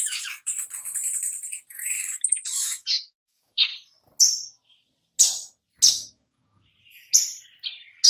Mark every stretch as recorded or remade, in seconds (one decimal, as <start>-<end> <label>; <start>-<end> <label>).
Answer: 0.0-0.5 remade; 0.5-1.8 recorded; 1.8-3.7 remade; 3.7-5.9 recorded; 5.9-6.7 remade; 6.7-8.1 recorded